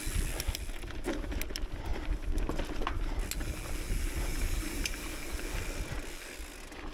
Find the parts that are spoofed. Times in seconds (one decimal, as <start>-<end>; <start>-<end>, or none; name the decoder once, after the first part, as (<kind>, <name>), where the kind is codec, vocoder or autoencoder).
4.3-4.9 (vocoder, BigVGAN v2)